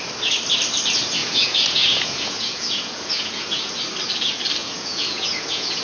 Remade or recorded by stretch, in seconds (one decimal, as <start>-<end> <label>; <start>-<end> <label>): 0.0-1.2 recorded; 1.2-3.7 remade; 3.7-4.6 recorded; 4.6-5.8 remade